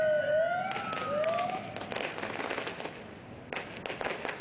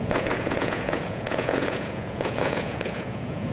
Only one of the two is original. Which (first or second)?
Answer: first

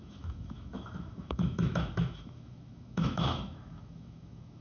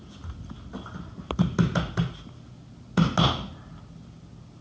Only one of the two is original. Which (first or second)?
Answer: second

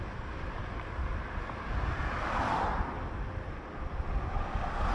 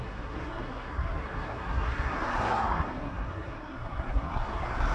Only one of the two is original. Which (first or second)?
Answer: first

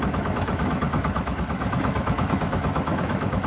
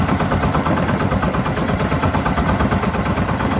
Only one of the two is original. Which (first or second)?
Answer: second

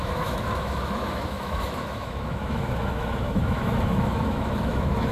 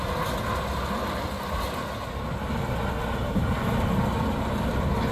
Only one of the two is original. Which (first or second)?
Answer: second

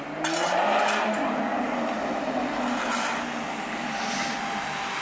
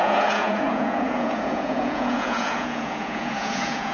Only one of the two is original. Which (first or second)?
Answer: first